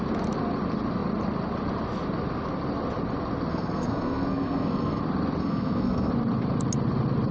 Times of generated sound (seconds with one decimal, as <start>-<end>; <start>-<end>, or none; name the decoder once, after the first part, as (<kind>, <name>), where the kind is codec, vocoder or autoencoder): 3.5-5.0 (codec, SNAC); 5.4-6.1